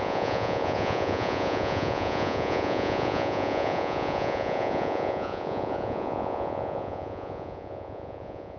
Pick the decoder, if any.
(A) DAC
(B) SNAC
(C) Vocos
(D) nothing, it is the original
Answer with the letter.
C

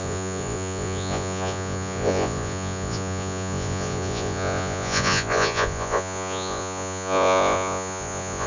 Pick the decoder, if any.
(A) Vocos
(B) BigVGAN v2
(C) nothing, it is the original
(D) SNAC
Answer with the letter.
A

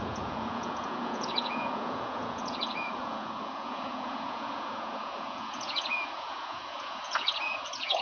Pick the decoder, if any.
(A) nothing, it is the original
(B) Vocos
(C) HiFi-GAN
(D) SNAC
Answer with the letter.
B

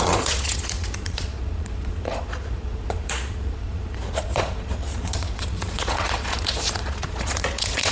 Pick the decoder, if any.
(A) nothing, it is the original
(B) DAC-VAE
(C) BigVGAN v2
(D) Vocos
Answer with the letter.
D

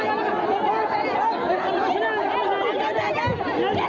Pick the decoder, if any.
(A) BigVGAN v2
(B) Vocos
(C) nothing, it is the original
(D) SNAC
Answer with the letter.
C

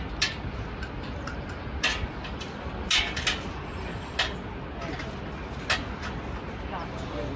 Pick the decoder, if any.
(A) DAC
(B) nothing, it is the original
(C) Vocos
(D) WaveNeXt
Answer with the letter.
B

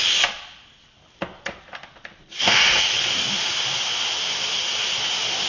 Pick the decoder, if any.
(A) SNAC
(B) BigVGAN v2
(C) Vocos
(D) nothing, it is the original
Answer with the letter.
D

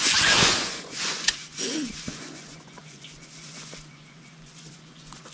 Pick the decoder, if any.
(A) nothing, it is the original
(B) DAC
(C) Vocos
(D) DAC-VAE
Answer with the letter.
C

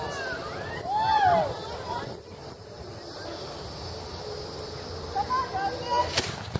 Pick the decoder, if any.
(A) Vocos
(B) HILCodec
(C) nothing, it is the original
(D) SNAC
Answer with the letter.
C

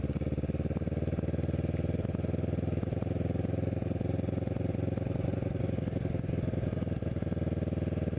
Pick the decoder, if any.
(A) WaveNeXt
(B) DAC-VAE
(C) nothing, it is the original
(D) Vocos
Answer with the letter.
C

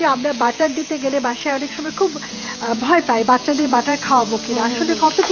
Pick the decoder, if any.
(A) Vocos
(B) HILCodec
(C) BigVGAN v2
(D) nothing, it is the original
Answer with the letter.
A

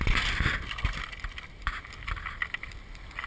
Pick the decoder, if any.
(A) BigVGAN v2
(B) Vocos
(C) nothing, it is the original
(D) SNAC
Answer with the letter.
C